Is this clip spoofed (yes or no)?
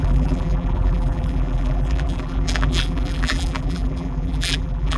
yes